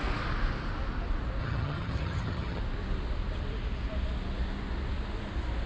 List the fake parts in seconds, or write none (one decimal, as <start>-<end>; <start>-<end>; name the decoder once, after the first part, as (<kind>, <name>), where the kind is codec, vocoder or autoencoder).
1.4-2.6 (vocoder, HiFi-GAN)